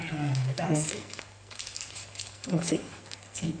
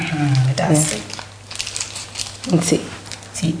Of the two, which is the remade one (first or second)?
first